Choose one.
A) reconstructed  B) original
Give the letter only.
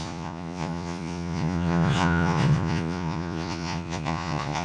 A